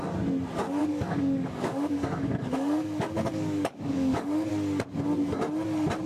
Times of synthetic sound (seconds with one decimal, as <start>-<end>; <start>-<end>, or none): 0.8-4.5